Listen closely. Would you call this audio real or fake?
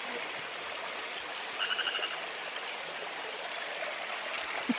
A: real